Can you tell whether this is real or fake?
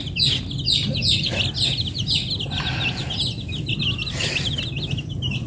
real